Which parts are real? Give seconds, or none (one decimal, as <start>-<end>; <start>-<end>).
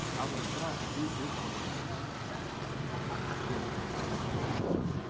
0.0-4.4